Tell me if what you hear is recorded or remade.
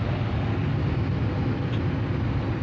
recorded